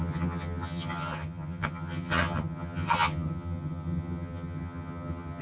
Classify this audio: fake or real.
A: fake